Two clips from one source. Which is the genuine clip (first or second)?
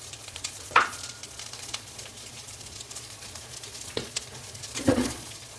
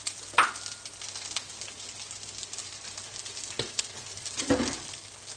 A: second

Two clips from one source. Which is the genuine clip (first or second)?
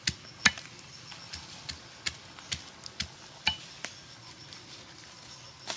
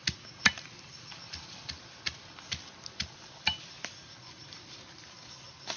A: first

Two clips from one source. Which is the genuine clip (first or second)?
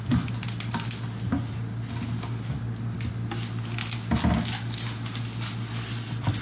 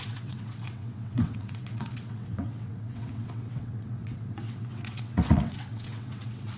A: first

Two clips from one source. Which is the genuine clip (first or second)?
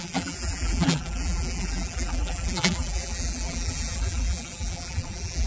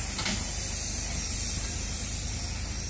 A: second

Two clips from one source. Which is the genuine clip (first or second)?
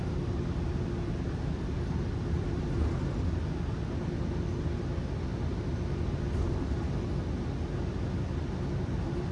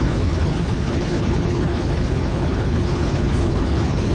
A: first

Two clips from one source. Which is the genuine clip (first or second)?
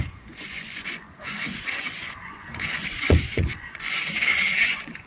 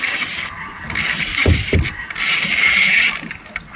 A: second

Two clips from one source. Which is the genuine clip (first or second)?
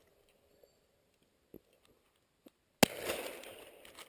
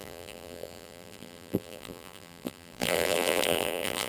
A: first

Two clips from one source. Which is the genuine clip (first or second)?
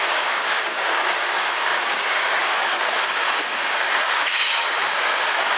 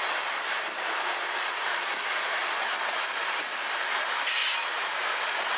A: second